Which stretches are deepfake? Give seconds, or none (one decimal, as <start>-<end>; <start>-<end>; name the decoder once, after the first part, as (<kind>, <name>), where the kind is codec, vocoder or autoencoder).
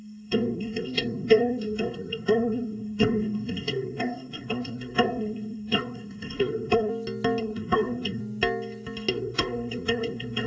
0.0-6.9 (codec, SNAC); 7.4-8.2; 9.1-10.5